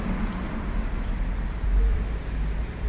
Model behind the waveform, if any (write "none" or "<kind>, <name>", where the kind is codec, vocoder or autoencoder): none